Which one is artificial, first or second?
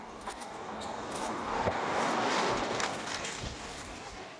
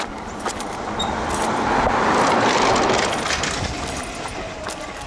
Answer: first